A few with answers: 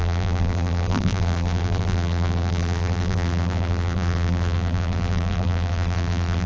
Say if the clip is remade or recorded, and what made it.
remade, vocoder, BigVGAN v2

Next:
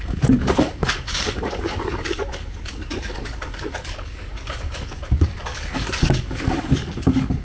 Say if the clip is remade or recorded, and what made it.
remade, codec, DAC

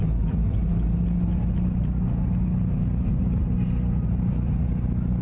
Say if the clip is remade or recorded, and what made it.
recorded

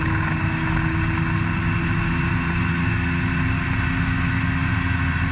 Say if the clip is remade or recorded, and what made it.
recorded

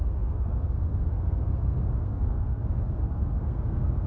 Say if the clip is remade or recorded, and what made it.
remade, codec, SNAC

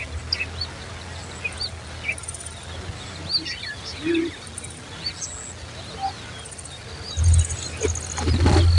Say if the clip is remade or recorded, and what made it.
recorded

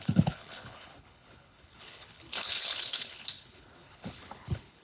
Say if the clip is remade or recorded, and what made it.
remade, codec, HILCodec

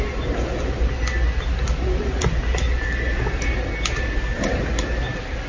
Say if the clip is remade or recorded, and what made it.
recorded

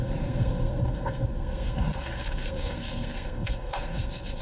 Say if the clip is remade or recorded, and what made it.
remade, codec, SNAC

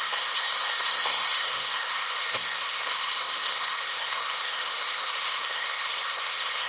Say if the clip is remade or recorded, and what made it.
remade, codec, SNAC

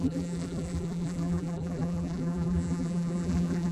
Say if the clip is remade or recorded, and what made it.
remade, vocoder, BigVGAN v2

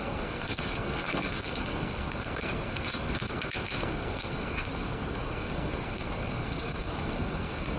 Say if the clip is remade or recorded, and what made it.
remade, codec, SNAC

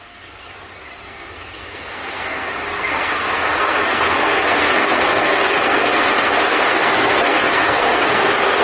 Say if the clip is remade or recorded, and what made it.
remade, codec, SNAC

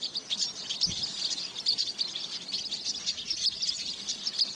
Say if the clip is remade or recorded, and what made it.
recorded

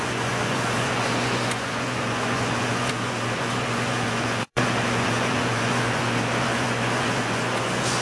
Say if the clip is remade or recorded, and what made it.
remade, vocoder, Vocos